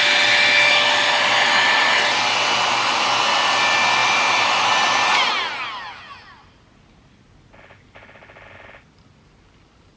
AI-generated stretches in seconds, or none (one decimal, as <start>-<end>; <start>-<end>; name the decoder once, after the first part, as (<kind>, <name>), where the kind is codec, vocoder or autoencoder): none